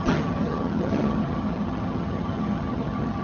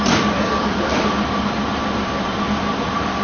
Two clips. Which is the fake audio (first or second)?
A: first